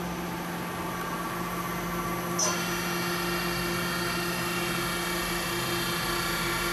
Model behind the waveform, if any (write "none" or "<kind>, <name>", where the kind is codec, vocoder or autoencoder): none